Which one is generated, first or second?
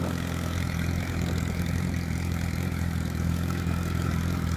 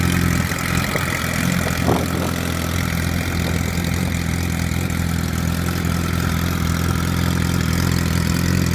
first